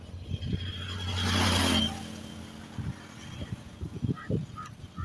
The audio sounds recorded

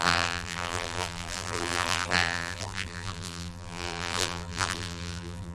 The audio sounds remade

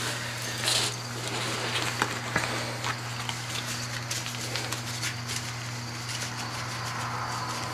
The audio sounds recorded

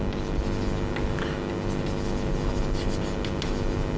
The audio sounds recorded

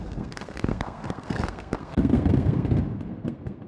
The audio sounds remade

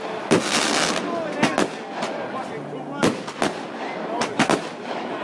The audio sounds recorded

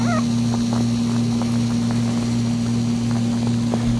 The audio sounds recorded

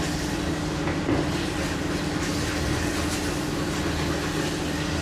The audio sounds recorded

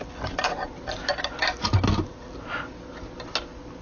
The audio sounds recorded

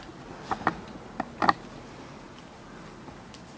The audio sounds recorded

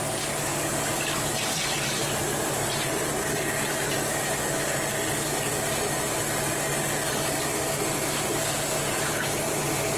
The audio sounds recorded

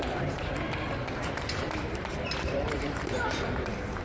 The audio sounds remade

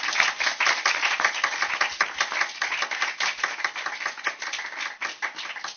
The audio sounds recorded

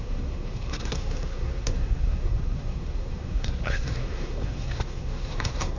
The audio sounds remade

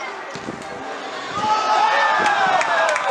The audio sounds recorded